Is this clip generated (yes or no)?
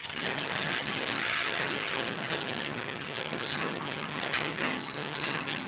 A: yes